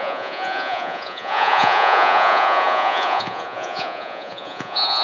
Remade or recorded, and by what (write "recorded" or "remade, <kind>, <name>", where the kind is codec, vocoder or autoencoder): remade, vocoder, Vocos